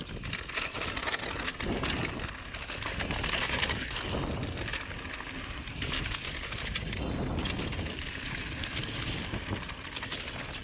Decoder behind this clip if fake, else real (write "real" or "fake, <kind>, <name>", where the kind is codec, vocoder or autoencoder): real